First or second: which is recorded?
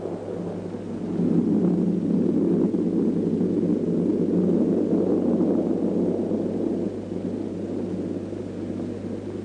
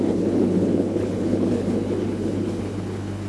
first